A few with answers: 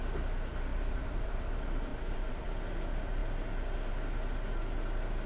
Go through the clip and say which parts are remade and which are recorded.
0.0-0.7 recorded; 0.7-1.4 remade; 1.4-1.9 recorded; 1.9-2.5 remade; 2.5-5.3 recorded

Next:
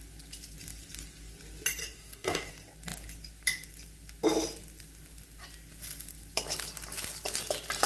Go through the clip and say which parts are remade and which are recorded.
0.0-1.8 recorded; 1.8-2.5 remade; 2.5-7.9 recorded

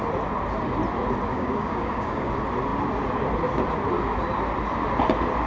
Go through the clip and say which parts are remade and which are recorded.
0.0-1.3 recorded; 1.3-2.3 remade; 2.3-5.5 recorded

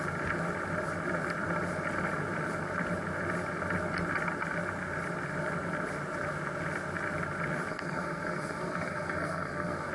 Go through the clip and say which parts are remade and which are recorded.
0.0-7.7 recorded; 7.7-9.9 remade

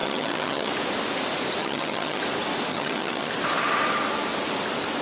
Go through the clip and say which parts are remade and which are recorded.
0.0-0.7 remade; 0.7-1.6 recorded; 1.6-2.2 remade; 2.2-2.7 recorded; 2.7-3.3 remade; 3.3-5.0 recorded

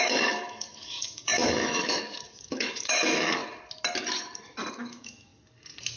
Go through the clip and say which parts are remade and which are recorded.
0.0-3.4 remade; 3.4-4.7 recorded; 4.7-5.3 remade; 5.3-6.0 recorded